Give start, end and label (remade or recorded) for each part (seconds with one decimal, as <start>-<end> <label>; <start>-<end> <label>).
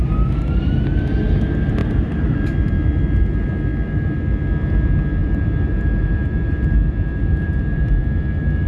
0.0-1.8 recorded; 1.8-2.7 remade; 2.7-3.7 recorded; 3.7-4.2 remade; 4.2-5.2 recorded; 5.2-8.0 remade; 8.0-8.7 recorded